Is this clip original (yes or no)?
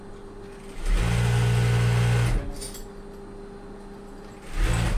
yes